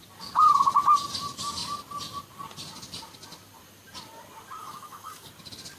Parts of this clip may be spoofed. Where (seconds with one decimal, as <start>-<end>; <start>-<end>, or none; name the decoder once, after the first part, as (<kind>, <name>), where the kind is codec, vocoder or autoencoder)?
4.6-5.3 (autoencoder, DAC-VAE)